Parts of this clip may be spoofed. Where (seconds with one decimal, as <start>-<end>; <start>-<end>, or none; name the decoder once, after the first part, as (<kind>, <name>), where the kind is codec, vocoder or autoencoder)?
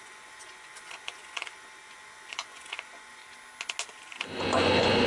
0.0-3.2 (vocoder, Vocos); 4.4-5.1